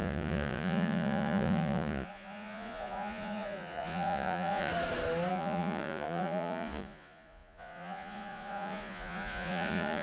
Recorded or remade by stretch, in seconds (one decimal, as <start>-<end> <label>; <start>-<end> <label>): 0.0-4.7 remade; 4.7-5.3 recorded; 5.3-10.0 remade